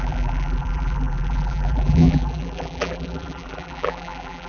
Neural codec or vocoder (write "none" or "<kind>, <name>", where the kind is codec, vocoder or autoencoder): vocoder, BigVGAN v2